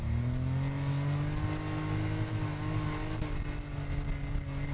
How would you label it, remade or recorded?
recorded